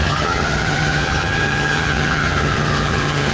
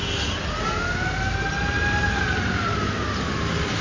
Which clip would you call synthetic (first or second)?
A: first